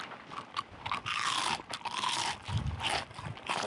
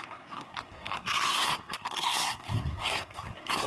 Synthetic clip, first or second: second